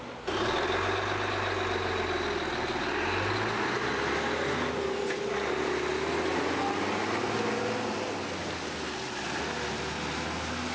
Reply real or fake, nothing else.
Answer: real